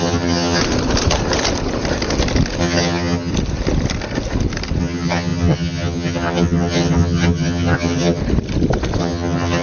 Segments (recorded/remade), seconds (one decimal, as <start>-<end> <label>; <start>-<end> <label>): 0.0-0.6 remade; 0.6-2.6 recorded; 2.6-3.3 remade; 3.3-4.8 recorded; 4.8-8.2 remade; 8.2-9.0 recorded; 9.0-9.6 remade